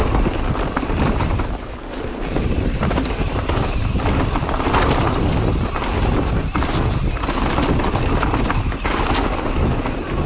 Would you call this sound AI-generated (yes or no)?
no